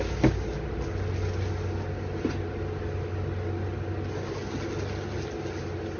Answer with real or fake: real